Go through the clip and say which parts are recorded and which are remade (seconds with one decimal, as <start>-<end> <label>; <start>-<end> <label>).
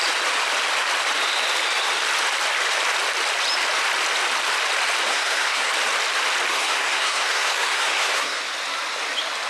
0.0-5.1 recorded; 5.1-5.7 remade; 5.7-6.5 recorded; 6.5-8.4 remade; 8.4-9.5 recorded